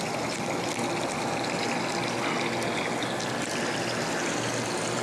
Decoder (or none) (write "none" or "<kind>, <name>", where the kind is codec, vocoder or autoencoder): none